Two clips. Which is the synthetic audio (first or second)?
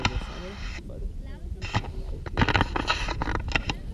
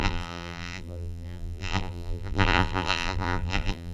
second